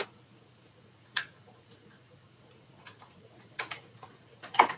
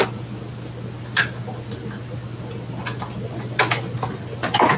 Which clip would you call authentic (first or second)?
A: second